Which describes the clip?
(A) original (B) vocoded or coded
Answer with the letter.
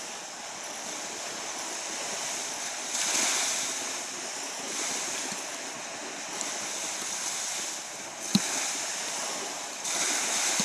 A